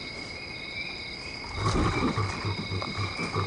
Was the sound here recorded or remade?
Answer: recorded